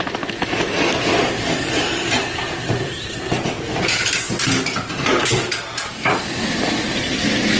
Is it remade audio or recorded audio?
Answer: remade